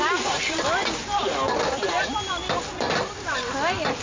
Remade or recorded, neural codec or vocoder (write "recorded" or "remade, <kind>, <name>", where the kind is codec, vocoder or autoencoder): recorded